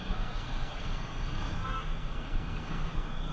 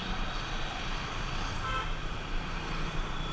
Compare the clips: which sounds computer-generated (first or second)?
first